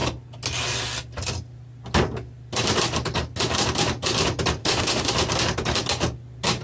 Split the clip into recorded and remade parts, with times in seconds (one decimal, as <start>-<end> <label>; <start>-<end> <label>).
0.0-4.6 recorded; 4.6-5.1 remade; 5.1-6.6 recorded